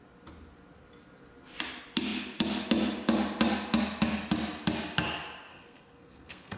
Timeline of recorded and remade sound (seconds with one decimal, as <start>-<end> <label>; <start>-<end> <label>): 0.0-5.5 recorded; 5.5-6.6 remade